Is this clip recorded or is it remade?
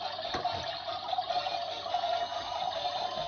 recorded